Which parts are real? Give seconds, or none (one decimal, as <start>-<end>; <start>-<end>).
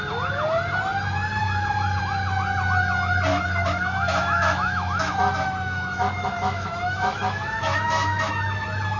0.0-3.3; 8.3-9.0